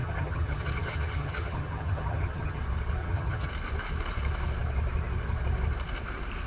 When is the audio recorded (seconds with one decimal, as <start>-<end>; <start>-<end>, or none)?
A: 2.6-3.0; 3.5-6.5